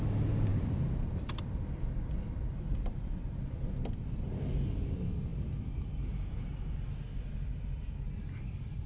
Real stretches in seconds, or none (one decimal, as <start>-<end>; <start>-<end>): 0.0-0.5; 4.5-8.9